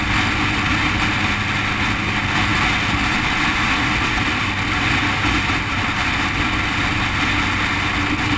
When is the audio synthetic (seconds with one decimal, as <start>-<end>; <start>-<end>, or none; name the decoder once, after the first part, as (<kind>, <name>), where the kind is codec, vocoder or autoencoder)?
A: none